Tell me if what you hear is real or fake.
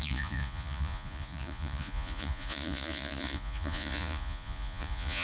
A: fake